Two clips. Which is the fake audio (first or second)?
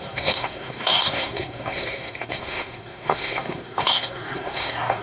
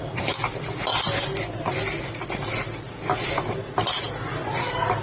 first